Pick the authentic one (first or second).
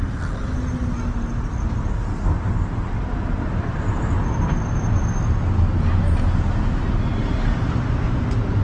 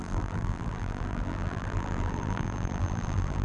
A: first